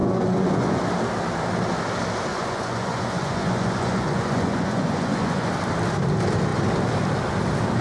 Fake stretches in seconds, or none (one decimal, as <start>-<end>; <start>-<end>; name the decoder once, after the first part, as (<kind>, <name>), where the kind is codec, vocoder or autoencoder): 0.0-0.8 (vocoder, Vocos); 2.3-5.5